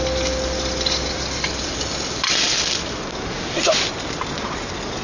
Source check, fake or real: real